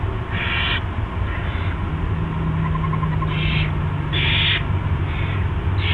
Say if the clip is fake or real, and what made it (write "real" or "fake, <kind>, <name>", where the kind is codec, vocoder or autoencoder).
real